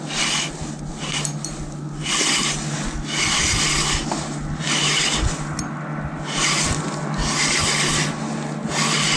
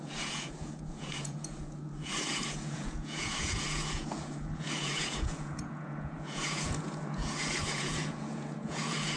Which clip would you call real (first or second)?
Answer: first